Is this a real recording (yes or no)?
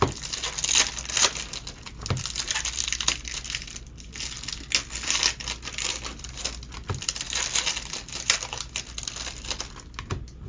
yes